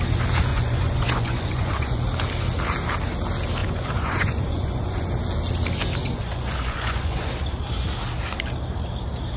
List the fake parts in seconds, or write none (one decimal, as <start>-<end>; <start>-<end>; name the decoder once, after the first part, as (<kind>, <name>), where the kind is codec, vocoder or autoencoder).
0.5-2.0 (vocoder, Vocos); 3.6-5.2; 6.0-7.3